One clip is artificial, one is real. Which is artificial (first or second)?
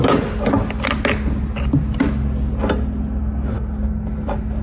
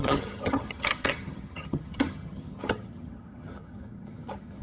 second